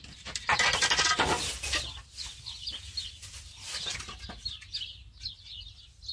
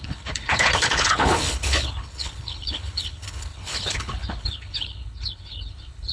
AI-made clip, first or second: second